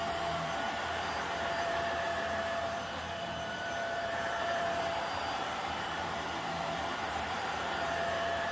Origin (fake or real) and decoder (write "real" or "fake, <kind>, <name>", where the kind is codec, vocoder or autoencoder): fake, vocoder, BigVGAN v2